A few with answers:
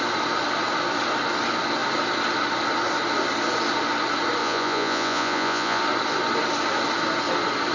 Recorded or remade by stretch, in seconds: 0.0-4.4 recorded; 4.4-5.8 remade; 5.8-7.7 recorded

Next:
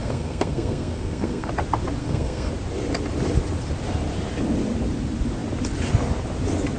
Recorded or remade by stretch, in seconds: 0.0-1.5 remade; 1.5-2.0 recorded; 2.0-2.5 remade; 2.5-6.8 recorded

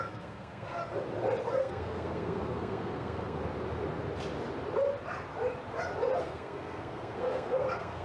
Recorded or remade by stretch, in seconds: 0.0-0.8 remade; 0.8-1.6 recorded; 1.6-3.4 remade; 3.4-6.2 recorded; 6.2-8.0 remade

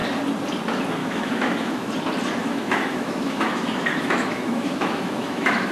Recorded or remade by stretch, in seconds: 0.0-1.0 recorded; 1.0-1.9 remade; 1.9-2.4 recorded; 2.4-5.7 remade